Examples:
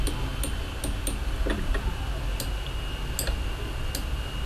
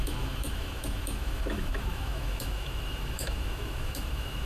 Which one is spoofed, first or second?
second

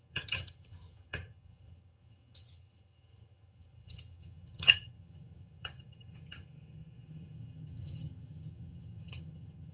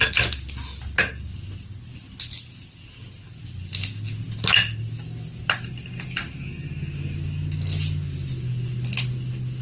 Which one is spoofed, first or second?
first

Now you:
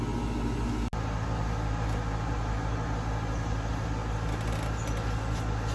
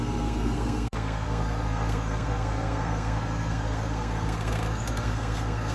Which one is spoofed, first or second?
second